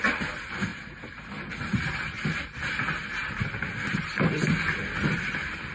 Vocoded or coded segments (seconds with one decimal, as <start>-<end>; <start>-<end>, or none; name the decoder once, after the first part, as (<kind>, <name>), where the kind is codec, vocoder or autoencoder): 0.7-1.8 (vocoder, BigVGAN v2)

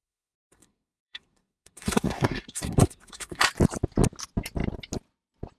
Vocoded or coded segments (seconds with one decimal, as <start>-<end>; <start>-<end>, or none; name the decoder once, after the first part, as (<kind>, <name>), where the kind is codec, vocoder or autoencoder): 0.0-3.4 (codec, SNAC)

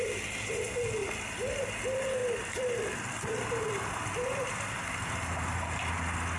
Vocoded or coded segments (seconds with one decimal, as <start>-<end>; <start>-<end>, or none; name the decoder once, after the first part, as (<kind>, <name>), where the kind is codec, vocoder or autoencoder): 1.0-1.8 (vocoder, BigVGAN v2); 2.2-5.1

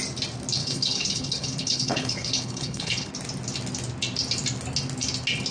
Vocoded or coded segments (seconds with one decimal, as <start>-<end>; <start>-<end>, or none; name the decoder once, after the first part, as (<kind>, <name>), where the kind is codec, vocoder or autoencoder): 0.6-3.1 (codec, HILCodec)

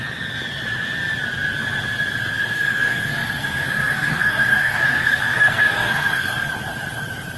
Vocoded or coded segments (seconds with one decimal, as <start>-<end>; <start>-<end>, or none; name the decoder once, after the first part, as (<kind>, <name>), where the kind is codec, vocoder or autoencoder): 2.3-6.5 (codec, SNAC)

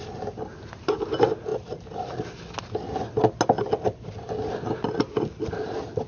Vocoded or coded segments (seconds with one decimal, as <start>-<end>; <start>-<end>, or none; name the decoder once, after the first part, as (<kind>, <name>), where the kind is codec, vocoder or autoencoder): none

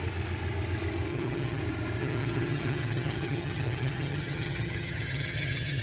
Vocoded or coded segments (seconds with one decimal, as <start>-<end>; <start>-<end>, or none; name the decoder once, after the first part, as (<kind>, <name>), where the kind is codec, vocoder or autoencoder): 1.1-1.6 (vocoder, HiFi-GAN); 2.0-5.8